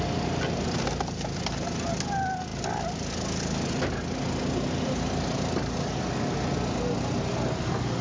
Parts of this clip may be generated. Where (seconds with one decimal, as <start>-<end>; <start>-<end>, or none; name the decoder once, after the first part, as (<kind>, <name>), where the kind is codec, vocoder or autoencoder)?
none